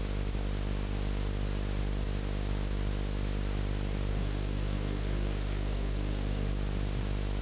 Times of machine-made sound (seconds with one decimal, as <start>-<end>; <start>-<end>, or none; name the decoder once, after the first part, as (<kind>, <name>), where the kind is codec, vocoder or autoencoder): 4.1-6.5 (codec, SNAC)